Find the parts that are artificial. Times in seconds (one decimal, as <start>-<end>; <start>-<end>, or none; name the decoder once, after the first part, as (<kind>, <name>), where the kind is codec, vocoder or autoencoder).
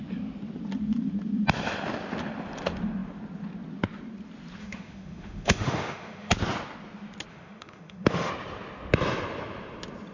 4.6-6.3 (autoencoder, DAC-VAE); 7.3-8.3